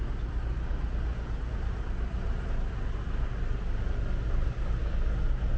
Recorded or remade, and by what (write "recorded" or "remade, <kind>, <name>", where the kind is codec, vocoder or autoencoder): recorded